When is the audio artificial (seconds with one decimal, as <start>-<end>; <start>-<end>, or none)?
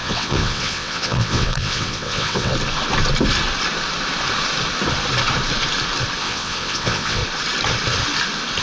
0.0-2.5; 6.2-7.2